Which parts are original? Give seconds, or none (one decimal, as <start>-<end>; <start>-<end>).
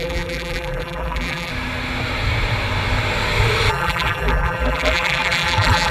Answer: 1.5-3.7